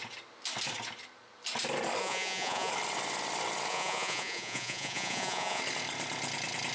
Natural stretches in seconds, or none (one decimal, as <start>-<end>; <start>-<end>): 0.0-2.0; 2.7-3.7; 5.6-6.7